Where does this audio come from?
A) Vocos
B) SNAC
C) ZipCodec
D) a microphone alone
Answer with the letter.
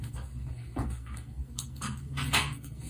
B